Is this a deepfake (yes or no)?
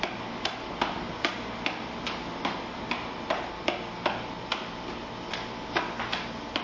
no